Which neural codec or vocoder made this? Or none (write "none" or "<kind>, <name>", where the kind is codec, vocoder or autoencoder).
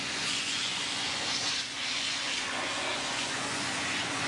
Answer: vocoder, Vocos